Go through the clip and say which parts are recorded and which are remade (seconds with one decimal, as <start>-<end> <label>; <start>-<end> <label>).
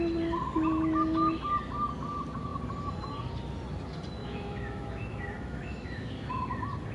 0.0-4.2 recorded; 4.2-6.4 remade; 6.4-6.9 recorded